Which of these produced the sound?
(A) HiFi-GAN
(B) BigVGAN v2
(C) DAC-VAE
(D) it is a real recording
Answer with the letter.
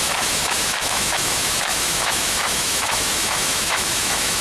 C